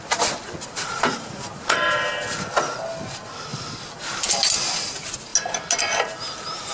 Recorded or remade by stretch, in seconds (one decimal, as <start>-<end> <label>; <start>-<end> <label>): 0.0-6.7 recorded